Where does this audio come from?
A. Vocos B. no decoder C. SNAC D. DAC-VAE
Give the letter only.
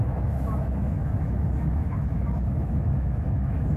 D